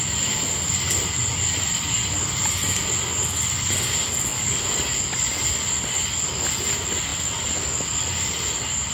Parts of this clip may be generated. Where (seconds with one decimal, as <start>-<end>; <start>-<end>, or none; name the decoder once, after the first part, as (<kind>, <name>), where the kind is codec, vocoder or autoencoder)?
none